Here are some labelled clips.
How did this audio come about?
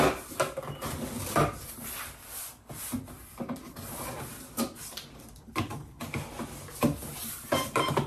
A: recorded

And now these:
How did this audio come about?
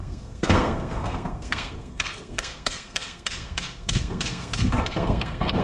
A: remade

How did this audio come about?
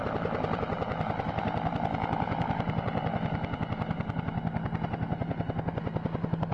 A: recorded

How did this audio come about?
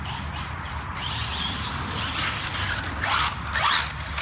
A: recorded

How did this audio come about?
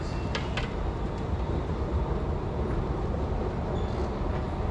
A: recorded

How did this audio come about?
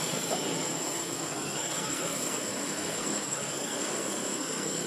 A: remade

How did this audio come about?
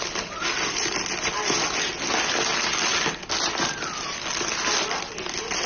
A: recorded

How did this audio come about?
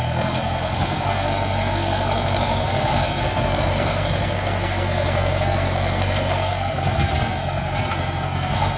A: remade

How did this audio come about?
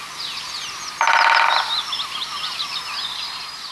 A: recorded